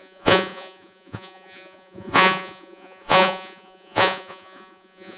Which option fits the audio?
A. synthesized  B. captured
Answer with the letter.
A